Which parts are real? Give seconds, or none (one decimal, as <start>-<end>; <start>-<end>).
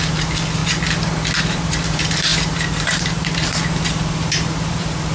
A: 0.6-1.4